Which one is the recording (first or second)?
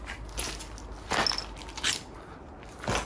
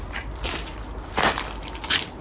first